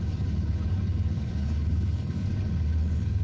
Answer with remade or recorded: remade